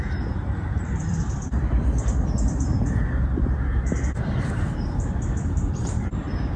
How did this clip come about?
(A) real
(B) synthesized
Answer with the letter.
B